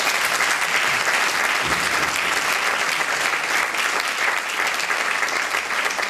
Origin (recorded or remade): recorded